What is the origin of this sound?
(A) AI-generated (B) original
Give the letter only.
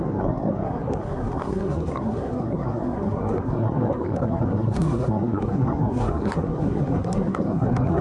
A